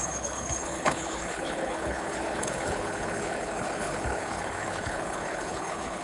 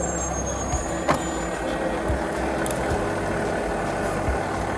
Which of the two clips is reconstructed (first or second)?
first